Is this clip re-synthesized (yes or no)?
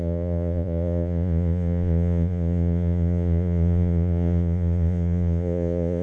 yes